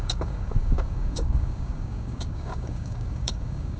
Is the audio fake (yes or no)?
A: yes